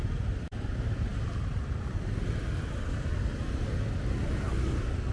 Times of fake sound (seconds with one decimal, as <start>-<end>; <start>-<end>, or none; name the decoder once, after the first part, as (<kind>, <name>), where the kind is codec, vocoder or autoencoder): none